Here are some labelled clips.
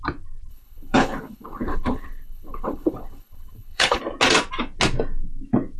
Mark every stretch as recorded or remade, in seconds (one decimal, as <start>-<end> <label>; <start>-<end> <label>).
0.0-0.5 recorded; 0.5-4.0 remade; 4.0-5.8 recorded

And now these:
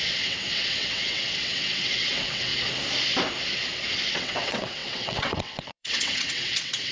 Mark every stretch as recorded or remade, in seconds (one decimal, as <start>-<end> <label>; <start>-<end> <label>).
0.0-2.5 remade; 2.5-4.1 recorded; 4.1-6.9 remade

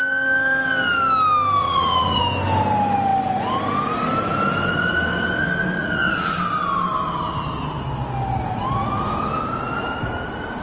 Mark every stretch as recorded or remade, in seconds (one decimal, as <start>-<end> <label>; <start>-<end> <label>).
0.0-1.6 recorded; 1.6-2.2 remade; 2.2-5.8 recorded; 5.8-6.4 remade; 6.4-10.6 recorded